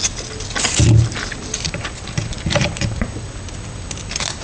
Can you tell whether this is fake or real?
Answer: real